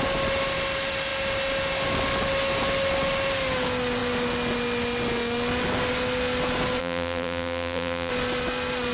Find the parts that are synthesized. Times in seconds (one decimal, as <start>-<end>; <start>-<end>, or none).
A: 6.8-8.1